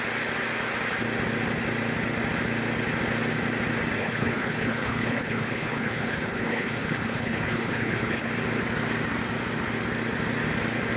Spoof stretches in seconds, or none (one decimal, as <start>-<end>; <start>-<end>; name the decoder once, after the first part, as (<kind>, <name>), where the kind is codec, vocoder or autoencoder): 4.0-8.3 (codec, HILCodec)